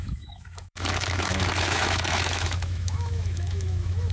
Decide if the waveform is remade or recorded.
remade